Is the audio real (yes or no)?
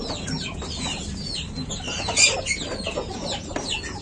yes